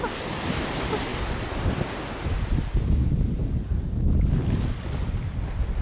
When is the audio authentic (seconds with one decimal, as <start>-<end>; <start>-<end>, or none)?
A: 0.0-5.8